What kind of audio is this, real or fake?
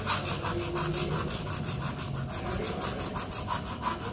real